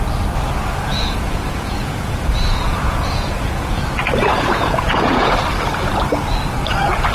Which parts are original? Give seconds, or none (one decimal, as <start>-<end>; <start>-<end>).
0.0-0.9; 3.8-4.3; 5.3-7.1